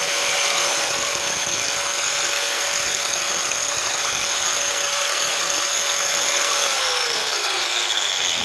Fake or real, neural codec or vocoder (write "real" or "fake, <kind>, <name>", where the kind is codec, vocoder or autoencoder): fake, codec, SNAC